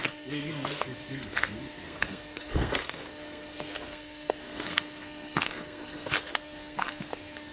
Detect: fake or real fake